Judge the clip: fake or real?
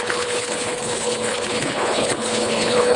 fake